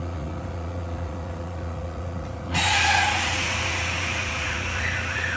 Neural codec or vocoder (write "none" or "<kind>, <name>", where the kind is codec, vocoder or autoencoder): vocoder, Vocos